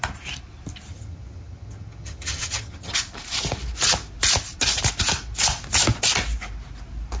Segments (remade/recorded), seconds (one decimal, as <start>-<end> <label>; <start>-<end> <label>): 0.0-0.9 recorded; 0.9-2.9 remade; 2.9-7.2 recorded